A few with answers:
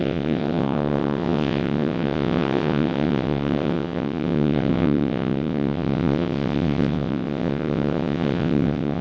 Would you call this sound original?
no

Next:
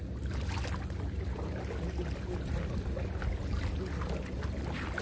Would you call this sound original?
yes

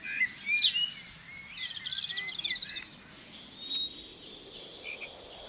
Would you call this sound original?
yes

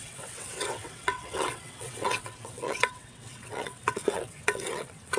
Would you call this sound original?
no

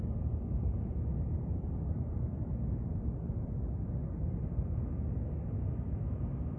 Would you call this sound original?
yes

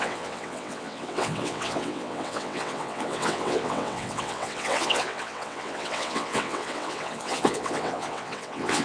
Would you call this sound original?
no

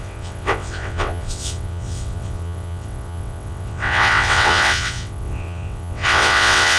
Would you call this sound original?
no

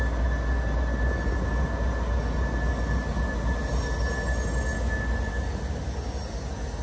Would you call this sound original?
yes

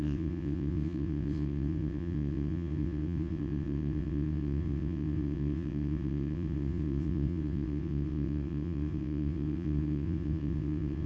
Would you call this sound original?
no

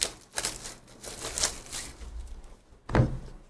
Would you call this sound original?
yes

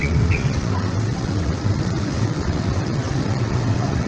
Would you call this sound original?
no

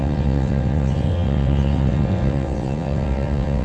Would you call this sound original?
no